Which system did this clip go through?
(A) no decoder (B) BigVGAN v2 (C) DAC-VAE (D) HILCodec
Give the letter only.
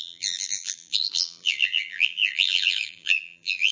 B